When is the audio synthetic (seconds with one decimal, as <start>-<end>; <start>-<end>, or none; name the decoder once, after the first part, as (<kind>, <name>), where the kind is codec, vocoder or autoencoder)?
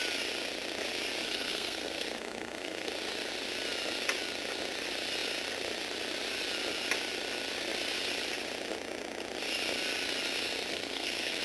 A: 1.2-2.9 (codec, SNAC); 10.7-11.4